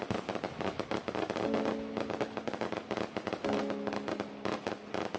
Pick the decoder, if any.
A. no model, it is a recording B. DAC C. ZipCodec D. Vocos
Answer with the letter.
A